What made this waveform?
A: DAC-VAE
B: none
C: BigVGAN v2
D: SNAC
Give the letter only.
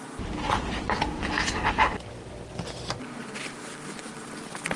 B